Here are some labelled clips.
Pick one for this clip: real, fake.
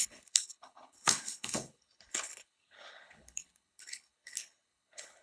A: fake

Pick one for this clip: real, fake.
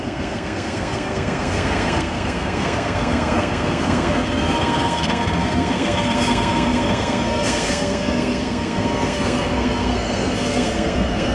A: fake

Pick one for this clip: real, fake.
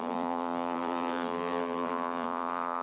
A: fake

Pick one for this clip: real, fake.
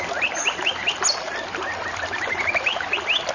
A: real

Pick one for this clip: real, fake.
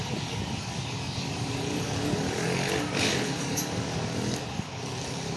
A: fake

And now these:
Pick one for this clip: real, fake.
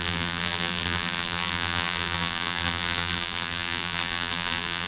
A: fake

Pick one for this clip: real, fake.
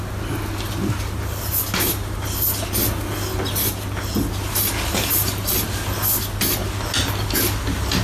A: real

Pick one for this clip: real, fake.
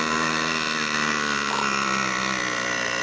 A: real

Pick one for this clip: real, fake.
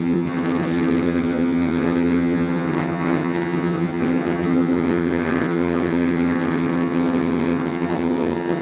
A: fake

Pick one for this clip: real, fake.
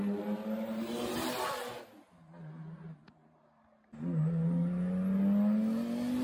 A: real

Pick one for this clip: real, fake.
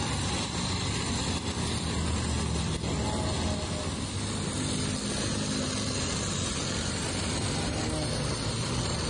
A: real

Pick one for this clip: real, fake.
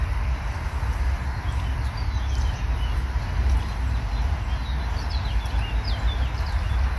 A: real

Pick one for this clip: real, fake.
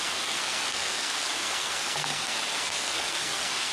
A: fake